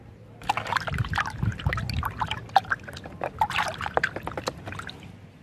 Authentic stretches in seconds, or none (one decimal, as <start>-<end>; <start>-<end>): 0.0-5.4